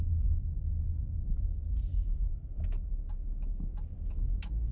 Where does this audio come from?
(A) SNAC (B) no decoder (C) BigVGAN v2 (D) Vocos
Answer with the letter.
B